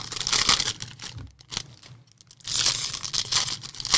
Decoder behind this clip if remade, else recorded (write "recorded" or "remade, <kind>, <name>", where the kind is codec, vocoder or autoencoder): recorded